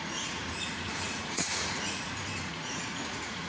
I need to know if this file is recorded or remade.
remade